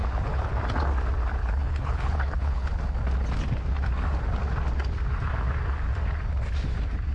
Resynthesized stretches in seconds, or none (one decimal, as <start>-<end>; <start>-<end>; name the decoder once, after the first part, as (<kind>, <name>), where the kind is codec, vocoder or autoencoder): 0.0-0.5 (codec, HILCodec); 1.4-2.8